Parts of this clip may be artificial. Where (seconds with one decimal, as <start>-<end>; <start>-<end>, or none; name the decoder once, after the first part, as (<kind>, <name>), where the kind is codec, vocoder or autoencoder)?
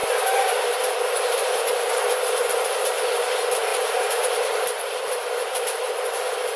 3.7-5.9 (vocoder, BigVGAN v2)